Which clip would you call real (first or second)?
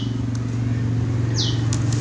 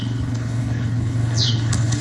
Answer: first